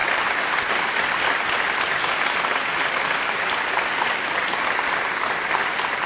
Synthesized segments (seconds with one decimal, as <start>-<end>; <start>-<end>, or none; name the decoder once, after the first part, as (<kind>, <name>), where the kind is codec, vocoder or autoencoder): none